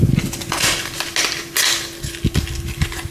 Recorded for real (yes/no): yes